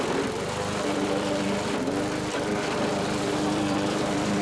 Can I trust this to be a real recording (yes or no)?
no